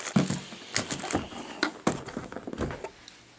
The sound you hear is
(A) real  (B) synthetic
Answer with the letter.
A